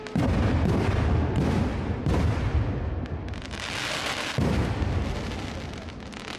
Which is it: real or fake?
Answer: real